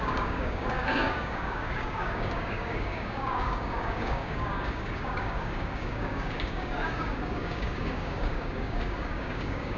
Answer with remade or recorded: remade